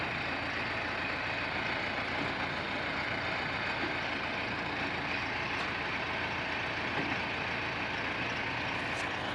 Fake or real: real